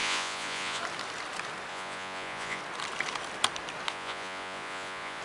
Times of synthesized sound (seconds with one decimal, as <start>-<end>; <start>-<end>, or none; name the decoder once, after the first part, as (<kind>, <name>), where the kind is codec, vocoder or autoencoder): 0.0-0.8 (vocoder, Vocos); 1.7-2.6; 3.9-5.2